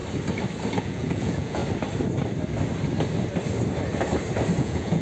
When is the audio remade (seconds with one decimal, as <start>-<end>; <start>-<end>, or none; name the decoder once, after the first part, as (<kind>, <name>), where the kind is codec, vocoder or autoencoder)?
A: 0.8-1.6 (vocoder, Vocos); 4.6-5.0